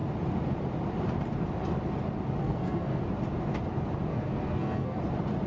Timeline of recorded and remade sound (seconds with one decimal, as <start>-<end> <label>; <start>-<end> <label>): 0.0-2.4 recorded; 2.4-3.0 remade; 3.0-4.1 recorded; 4.1-5.0 remade; 5.0-5.5 recorded